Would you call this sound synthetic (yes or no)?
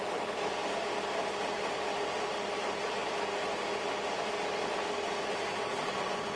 no